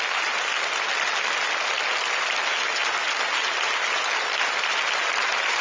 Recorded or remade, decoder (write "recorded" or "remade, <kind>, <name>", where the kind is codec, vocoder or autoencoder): recorded